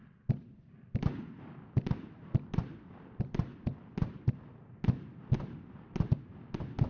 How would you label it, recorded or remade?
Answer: recorded